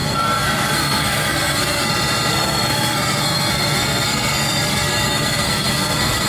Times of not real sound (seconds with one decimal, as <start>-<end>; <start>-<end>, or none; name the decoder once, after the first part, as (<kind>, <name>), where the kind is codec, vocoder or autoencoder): 0.0-1.9 (codec, SNAC); 2.3-6.3

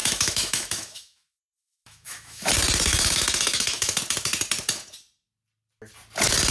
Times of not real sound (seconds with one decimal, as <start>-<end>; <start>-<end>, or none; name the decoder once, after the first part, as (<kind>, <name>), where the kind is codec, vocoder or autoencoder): 0.0-2.5 (autoencoder, DAC-VAE); 2.9-4.0

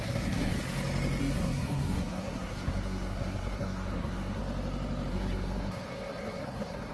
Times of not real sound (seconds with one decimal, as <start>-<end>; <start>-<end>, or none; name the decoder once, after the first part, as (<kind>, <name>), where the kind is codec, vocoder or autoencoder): 0.0-0.5 (codec, SNAC); 1.2-4.4; 5.1-6.9

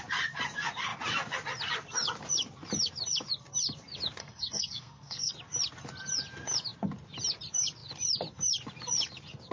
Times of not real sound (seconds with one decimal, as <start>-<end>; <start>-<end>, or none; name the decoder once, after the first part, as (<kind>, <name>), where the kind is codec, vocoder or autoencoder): 4.2-5.3 (codec, SNAC)

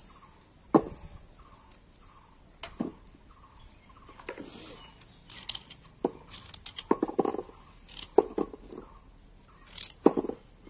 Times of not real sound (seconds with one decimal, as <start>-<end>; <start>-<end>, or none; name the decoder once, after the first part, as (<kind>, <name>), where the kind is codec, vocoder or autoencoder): none